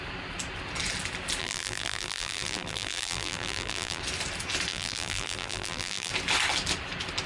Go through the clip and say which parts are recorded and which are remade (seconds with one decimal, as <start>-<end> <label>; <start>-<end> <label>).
0.0-1.4 recorded; 1.4-4.0 remade; 4.0-4.7 recorded; 4.7-6.1 remade; 6.1-7.3 recorded